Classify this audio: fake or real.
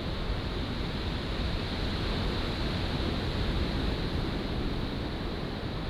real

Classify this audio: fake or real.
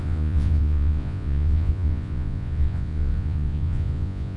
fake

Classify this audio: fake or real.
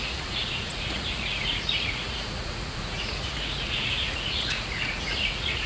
fake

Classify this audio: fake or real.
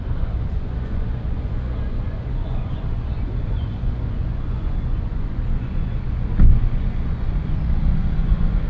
fake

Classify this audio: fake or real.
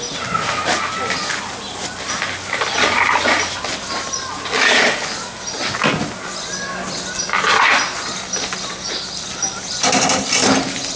real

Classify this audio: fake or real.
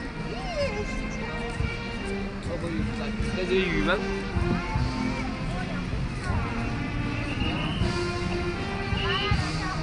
real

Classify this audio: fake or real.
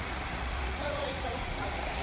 fake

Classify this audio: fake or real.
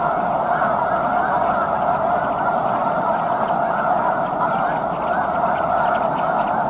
real